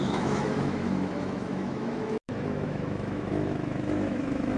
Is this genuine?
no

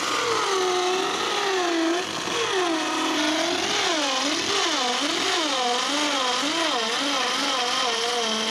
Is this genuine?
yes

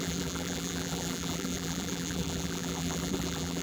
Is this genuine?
no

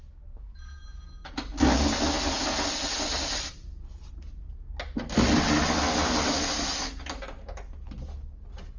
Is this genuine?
yes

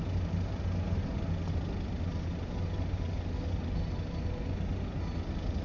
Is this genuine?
yes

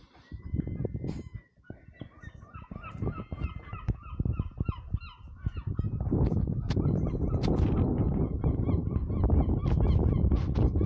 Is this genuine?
yes